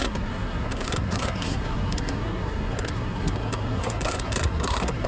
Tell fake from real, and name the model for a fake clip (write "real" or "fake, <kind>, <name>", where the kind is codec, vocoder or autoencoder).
fake, codec, SNAC